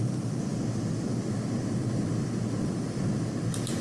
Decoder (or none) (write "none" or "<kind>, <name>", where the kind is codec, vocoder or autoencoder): none